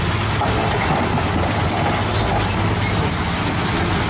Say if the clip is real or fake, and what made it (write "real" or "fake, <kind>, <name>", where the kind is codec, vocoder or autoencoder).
real